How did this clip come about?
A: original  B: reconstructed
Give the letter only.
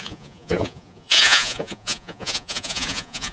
B